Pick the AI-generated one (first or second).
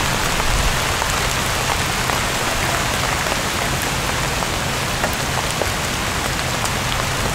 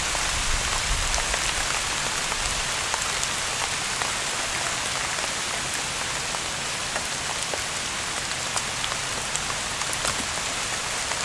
second